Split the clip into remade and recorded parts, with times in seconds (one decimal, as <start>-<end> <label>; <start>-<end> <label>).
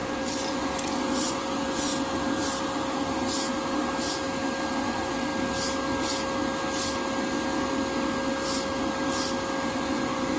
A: 0.0-1.9 remade; 1.9-4.8 recorded; 4.8-5.3 remade; 5.3-9.7 recorded; 9.7-10.4 remade